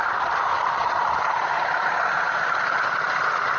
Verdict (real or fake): fake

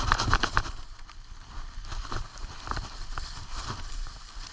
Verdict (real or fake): fake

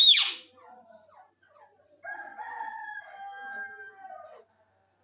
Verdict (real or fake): fake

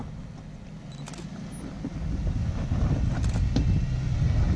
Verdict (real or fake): real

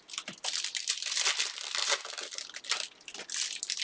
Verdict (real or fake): fake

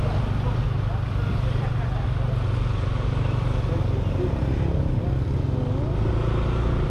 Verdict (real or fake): real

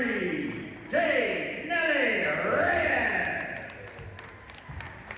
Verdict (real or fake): real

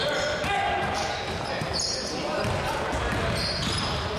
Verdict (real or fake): real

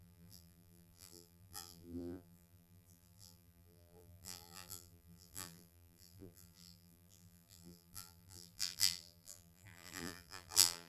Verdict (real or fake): fake